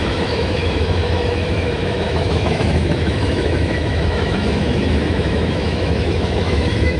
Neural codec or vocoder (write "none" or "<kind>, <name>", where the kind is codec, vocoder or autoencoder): autoencoder, DAC-VAE